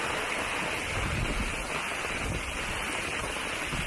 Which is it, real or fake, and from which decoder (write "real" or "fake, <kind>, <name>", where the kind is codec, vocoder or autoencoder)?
real